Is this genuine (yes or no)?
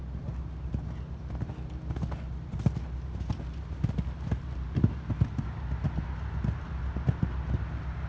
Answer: yes